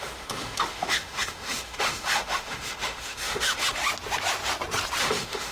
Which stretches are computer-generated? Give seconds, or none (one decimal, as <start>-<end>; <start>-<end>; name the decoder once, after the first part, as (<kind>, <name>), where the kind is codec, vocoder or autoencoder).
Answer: 0.0-3.8 (autoencoder, DAC-VAE); 5.0-5.5